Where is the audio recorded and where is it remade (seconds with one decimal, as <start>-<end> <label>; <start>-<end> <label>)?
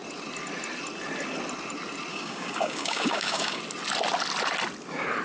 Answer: 0.0-2.1 recorded; 2.1-3.6 remade; 3.6-5.2 recorded